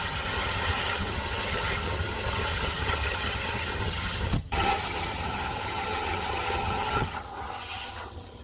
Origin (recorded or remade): remade